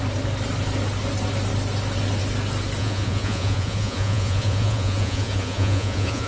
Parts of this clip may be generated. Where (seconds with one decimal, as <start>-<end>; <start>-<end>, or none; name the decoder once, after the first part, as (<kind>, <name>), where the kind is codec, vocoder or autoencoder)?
2.8-6.3 (vocoder, Vocos)